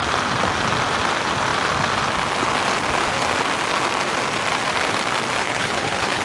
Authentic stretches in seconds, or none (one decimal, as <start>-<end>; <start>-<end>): 0.0-5.4